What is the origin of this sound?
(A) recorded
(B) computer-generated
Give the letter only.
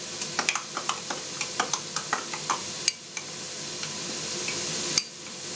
A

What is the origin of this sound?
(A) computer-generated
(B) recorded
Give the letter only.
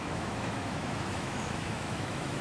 A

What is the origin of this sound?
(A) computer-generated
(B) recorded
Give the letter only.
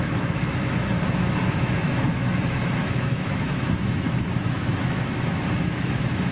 A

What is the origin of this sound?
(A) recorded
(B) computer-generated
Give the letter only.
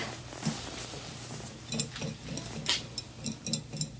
A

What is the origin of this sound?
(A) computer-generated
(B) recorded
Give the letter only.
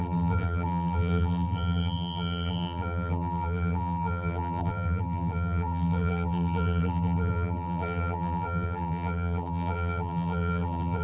A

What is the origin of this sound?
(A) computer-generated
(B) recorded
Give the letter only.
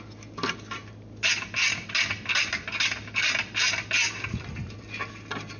B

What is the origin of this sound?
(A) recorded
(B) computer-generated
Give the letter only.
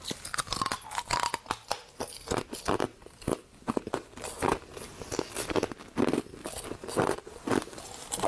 A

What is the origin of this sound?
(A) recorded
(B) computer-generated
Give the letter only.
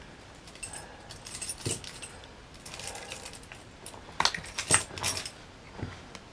A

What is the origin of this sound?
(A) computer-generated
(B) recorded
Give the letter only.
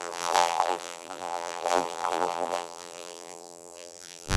A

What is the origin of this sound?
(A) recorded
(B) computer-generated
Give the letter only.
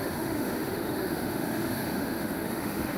B